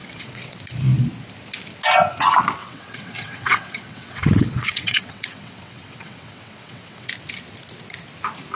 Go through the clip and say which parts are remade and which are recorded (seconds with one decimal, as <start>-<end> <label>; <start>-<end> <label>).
0.0-0.6 remade; 0.6-2.6 recorded; 2.6-7.1 remade; 7.1-8.6 recorded